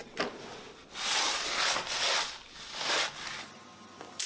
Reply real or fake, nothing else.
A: real